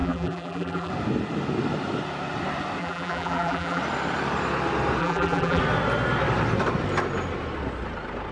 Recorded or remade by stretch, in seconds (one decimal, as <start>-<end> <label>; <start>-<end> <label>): 0.0-0.9 remade; 0.9-2.8 recorded; 2.8-3.8 remade; 3.8-5.0 recorded; 5.0-5.6 remade; 5.6-8.3 recorded